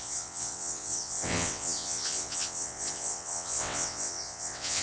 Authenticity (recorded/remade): remade